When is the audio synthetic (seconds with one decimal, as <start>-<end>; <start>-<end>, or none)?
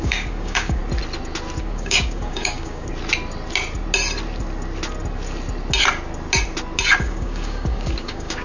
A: 0.0-0.8; 1.6-2.9; 7.0-8.4